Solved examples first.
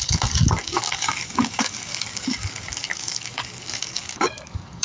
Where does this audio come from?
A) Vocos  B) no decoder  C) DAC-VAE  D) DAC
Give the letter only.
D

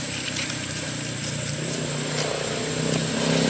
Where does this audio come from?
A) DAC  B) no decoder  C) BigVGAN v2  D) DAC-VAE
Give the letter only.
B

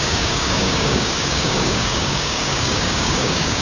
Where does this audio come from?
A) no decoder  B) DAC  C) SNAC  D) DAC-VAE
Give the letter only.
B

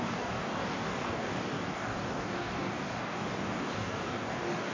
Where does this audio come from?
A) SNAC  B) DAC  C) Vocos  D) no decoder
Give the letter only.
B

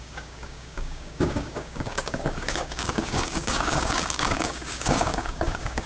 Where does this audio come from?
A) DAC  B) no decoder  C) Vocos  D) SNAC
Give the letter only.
A